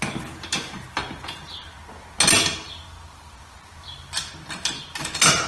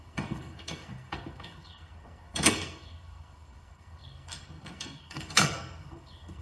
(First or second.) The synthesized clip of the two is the second